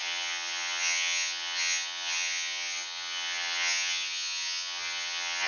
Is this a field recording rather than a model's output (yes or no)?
no